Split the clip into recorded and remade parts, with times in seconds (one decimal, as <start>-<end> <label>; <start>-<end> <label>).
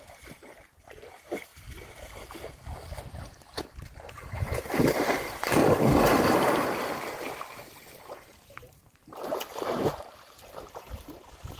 0.0-1.5 remade; 1.5-3.0 recorded; 3.0-5.6 remade; 5.6-7.5 recorded; 7.5-11.6 remade